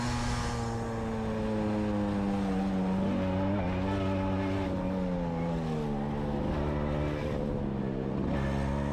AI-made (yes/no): no